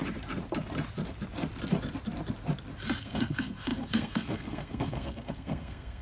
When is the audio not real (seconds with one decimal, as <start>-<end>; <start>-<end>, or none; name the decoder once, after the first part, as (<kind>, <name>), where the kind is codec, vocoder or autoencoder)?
3.0-6.0 (codec, SNAC)